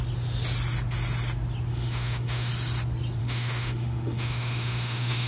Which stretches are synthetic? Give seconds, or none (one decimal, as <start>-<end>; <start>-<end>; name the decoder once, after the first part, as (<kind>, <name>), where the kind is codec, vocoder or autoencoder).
1.7-2.5 (autoencoder, DAC-VAE); 3.2-5.3